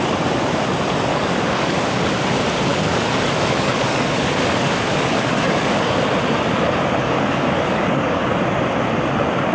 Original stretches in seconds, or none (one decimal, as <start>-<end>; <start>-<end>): 0.0-1.1; 2.0-2.7; 5.9-7.0; 8.3-9.5